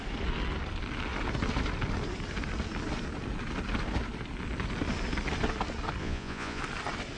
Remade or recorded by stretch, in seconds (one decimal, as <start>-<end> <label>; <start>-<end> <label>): 0.0-6.0 recorded; 6.0-6.6 remade; 6.6-7.2 recorded